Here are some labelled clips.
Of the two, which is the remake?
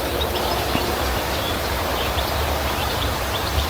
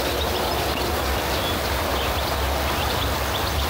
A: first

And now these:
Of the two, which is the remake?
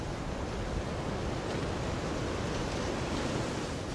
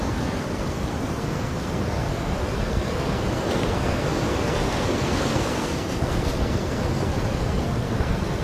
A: second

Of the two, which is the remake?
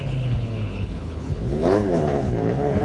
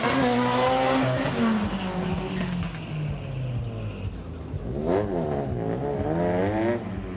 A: first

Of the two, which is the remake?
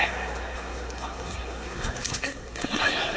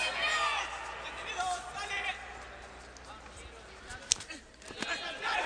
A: first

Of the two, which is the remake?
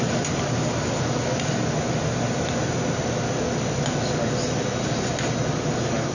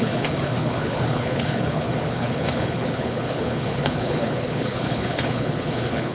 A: second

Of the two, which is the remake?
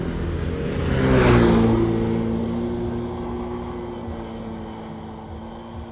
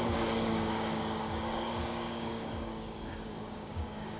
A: second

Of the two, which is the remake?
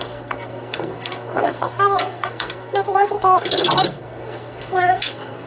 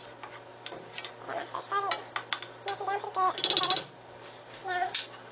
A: first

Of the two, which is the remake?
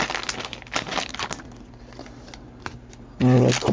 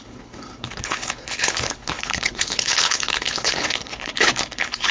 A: second